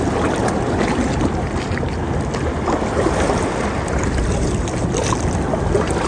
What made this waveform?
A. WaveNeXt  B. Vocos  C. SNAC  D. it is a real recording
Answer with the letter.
D